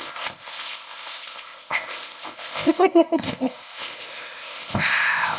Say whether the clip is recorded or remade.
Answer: remade